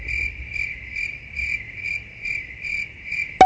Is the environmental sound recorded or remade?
recorded